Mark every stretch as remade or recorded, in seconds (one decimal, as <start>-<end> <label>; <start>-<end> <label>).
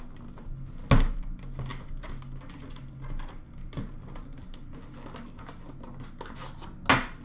0.0-7.2 recorded